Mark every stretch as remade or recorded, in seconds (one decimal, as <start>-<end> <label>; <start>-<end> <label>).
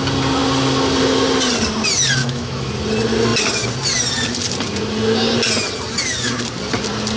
0.0-2.2 recorded; 2.2-2.7 remade; 2.7-7.2 recorded